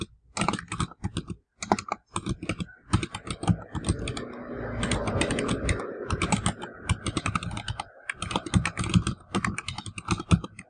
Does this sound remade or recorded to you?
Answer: recorded